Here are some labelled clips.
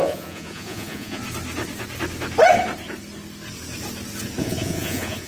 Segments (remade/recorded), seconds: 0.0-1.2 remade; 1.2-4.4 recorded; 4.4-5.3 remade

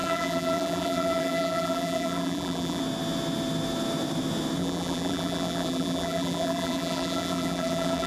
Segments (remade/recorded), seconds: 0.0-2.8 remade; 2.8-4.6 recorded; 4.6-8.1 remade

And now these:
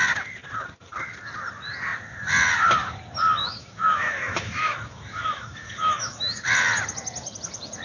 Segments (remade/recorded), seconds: 0.0-3.4 recorded; 3.4-6.4 remade; 6.4-7.8 recorded

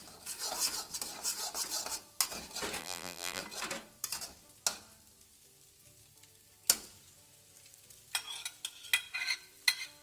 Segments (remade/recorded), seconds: 0.0-2.8 recorded; 2.8-3.4 remade; 3.4-10.0 recorded